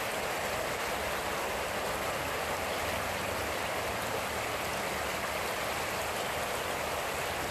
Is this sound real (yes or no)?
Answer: yes